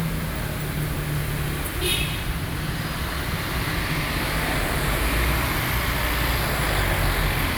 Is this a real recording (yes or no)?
yes